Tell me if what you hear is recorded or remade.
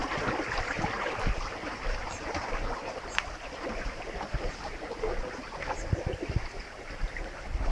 recorded